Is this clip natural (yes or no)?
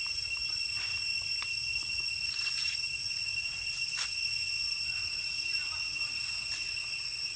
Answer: yes